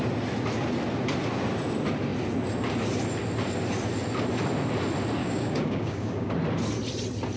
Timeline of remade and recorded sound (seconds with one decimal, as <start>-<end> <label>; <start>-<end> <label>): 0.0-5.2 recorded; 5.2-6.3 remade; 6.3-7.4 recorded